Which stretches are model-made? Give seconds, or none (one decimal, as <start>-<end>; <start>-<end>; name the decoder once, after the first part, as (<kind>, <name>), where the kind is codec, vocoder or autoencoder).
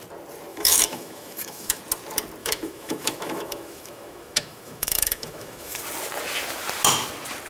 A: 0.5-1.8 (autoencoder, DAC-VAE); 2.4-5.8